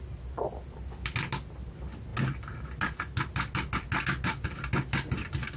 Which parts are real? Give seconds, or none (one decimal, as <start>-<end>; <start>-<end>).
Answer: 0.0-5.6